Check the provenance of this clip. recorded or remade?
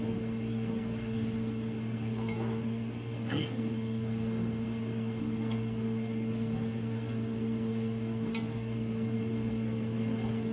remade